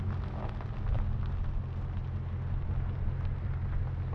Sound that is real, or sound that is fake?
real